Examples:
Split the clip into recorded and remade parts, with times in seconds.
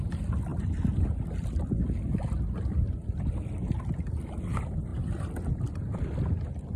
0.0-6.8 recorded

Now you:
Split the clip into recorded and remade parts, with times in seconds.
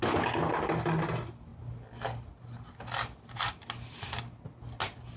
0.0-5.2 recorded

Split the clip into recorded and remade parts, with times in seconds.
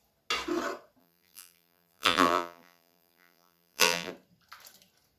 0.0-1.0 recorded; 1.0-4.1 remade; 4.1-5.2 recorded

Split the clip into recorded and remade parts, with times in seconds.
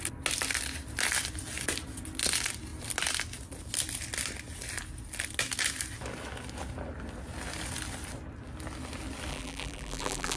0.0-9.3 recorded; 9.3-10.4 remade